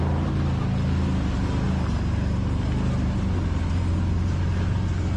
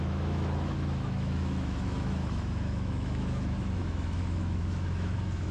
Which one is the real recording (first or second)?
first